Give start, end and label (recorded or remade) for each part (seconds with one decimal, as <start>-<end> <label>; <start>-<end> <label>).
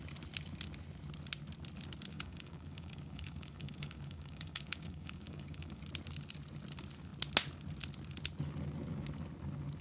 0.0-2.1 recorded; 2.1-5.8 remade; 5.8-9.8 recorded